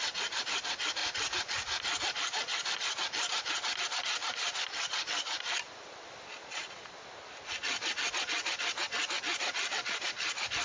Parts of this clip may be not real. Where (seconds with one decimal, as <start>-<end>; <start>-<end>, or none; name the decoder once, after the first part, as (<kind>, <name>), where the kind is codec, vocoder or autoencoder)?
6.4-6.9 (vocoder, Vocos)